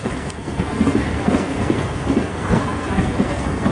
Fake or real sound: fake